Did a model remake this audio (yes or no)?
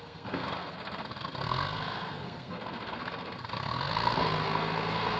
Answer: yes